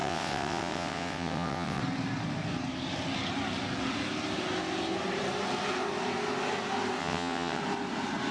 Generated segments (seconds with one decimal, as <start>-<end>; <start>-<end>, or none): 0.0-1.8; 7.0-7.6